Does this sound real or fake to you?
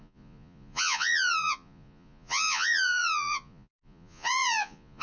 fake